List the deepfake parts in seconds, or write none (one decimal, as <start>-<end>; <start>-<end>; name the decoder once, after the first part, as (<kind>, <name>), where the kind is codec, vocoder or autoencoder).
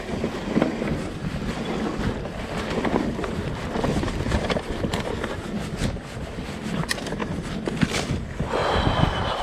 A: none